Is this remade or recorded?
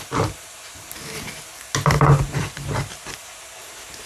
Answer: recorded